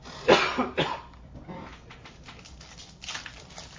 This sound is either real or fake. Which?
real